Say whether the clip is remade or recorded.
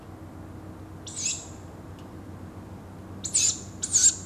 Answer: recorded